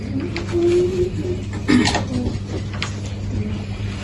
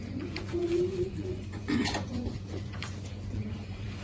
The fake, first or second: second